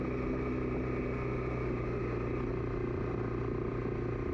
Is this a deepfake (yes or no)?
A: no